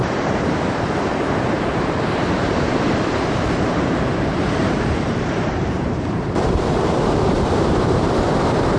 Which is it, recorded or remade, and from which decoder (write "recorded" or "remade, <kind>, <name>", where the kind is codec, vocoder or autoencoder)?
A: remade, vocoder, BigVGAN v2